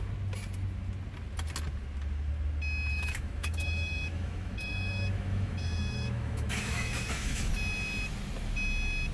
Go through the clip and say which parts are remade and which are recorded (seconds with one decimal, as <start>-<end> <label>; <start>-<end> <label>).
0.0-2.9 recorded; 2.9-7.5 remade; 7.5-9.1 recorded